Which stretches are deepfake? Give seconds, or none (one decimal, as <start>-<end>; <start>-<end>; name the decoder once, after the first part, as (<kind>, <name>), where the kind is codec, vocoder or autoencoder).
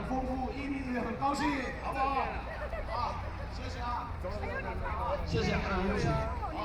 0.4-1.2 (vocoder, BigVGAN v2); 2.1-5.2